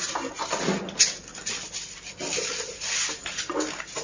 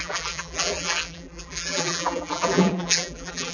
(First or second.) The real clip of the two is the first